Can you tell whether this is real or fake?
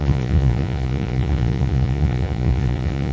fake